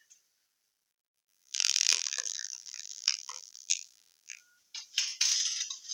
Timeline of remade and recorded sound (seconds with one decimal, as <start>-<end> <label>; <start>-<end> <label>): 0.0-0.9 recorded; 0.9-4.4 remade; 4.4-5.9 recorded